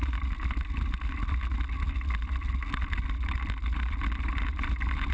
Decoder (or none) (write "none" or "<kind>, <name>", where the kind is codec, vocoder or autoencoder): none